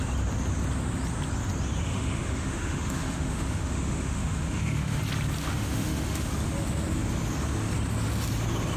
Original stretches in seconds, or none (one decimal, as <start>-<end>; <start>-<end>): 0.0-1.8; 5.0-5.4; 6.3-8.8